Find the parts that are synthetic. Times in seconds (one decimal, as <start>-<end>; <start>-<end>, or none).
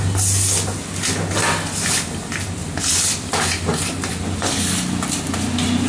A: none